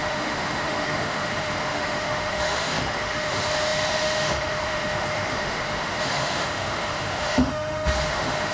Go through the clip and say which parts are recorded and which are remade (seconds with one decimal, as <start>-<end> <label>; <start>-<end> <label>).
0.0-8.5 remade